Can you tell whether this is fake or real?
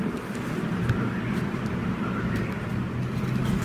real